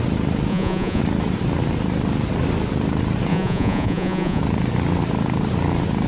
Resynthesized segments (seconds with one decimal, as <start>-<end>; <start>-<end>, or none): 0.5-1.0; 3.3-4.4